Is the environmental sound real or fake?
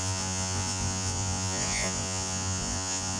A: fake